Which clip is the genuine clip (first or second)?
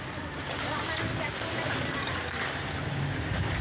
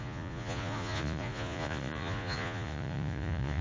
first